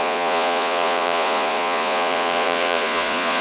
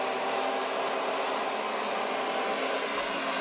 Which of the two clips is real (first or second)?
second